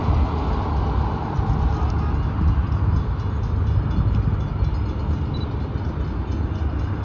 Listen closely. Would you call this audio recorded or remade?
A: recorded